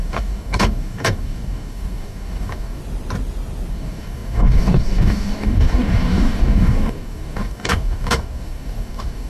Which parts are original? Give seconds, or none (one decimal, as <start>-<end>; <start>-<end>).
2.8-3.7